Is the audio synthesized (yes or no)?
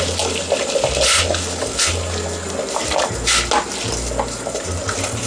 no